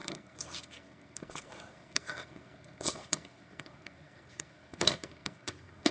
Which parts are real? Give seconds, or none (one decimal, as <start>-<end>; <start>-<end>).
none